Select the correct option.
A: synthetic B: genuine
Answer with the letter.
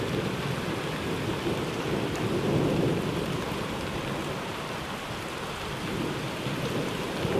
B